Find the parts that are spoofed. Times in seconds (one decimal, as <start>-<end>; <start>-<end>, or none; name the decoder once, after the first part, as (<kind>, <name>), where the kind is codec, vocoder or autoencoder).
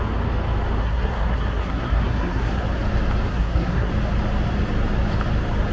0.8-2.6 (codec, SNAC); 3.3-3.9